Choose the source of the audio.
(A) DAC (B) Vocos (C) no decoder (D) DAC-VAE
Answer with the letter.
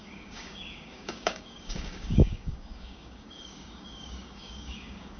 A